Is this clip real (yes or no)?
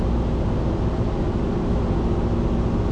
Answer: yes